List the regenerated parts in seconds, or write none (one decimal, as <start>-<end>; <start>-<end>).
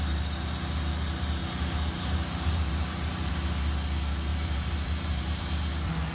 1.4-3.3; 4.3-5.6